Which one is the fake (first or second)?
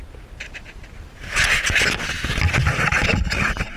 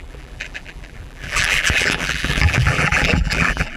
second